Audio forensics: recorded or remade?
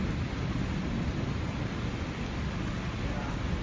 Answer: recorded